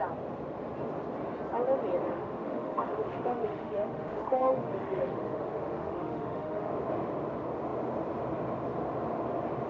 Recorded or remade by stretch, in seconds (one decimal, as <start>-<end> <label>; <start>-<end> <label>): 0.0-2.1 recorded; 2.1-6.7 remade; 6.7-9.7 recorded